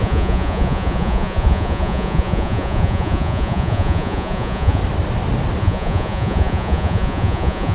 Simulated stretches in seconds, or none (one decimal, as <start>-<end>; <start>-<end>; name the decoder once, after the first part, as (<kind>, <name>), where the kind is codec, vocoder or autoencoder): 0.0-4.8 (vocoder, Vocos); 5.6-7.7